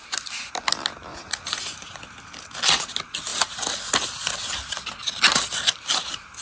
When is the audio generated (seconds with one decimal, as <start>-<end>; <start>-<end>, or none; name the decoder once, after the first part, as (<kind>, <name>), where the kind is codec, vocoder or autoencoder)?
1.1-2.0 (vocoder, Vocos)